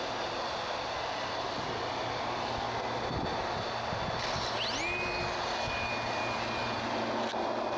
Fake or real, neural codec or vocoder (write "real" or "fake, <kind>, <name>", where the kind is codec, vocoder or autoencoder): real